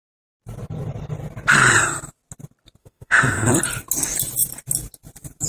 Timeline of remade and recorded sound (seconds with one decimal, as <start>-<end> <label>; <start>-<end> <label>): 0.0-2.8 recorded; 2.8-3.5 remade; 3.5-5.5 recorded